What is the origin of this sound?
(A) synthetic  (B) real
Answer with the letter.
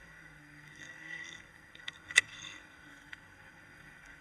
A